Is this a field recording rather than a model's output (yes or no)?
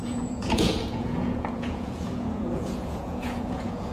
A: no